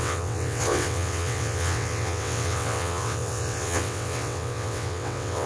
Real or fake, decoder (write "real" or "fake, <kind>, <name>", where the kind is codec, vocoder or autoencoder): fake, vocoder, WaveNeXt